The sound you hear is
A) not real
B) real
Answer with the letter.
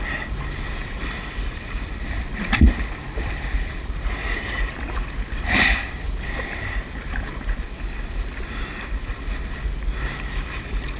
B